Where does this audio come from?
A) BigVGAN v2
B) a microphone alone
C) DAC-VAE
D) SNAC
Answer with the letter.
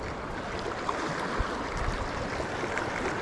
B